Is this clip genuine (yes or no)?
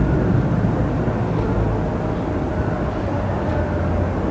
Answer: yes